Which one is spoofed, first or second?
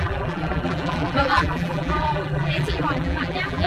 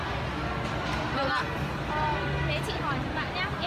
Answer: first